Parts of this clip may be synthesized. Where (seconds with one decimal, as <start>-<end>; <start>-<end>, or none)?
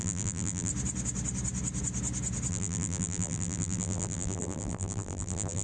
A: 0.0-0.7; 2.5-5.6